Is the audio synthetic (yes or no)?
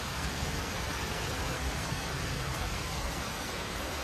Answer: yes